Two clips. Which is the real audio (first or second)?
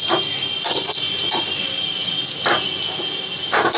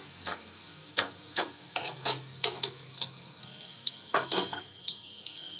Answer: first